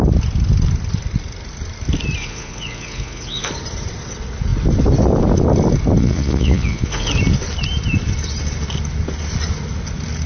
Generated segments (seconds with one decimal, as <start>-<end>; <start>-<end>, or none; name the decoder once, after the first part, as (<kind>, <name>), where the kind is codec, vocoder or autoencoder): 2.2-3.5 (vocoder, Vocos); 6.0-7.1